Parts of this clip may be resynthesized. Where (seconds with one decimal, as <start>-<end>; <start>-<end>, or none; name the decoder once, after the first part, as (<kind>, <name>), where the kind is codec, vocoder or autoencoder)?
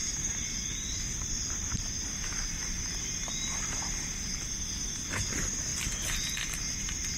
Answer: 1.5-5.7 (vocoder, BigVGAN v2); 6.6-7.2